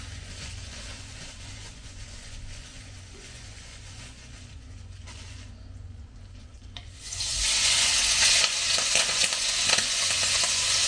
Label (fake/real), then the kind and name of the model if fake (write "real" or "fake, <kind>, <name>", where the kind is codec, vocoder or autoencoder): fake, vocoder, Vocos